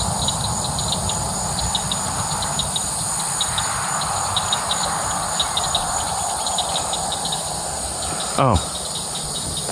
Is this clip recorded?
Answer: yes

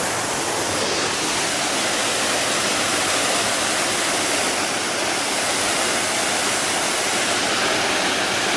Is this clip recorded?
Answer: yes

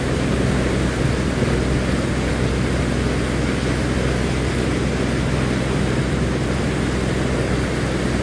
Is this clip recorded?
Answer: yes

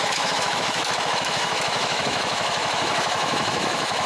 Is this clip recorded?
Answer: no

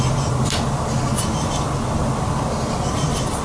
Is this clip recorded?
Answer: yes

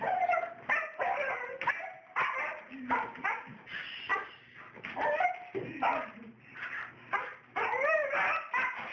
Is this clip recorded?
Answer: yes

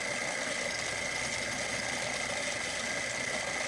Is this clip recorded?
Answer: yes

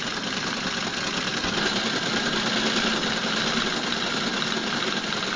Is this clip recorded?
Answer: yes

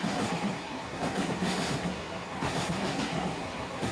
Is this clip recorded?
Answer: no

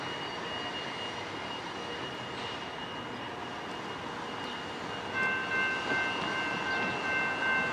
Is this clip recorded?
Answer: yes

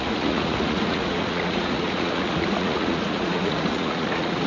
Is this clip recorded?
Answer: no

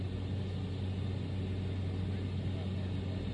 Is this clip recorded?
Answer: yes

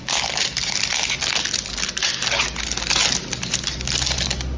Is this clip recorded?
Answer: yes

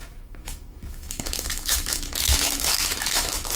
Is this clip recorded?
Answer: no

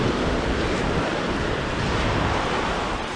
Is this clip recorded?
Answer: no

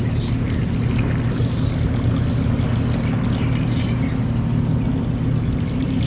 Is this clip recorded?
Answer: yes